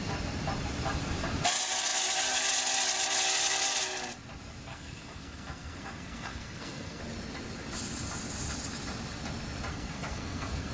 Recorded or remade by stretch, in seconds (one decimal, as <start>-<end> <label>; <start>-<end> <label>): 0.0-4.7 recorded; 4.7-7.0 remade; 7.0-9.7 recorded; 9.7-10.7 remade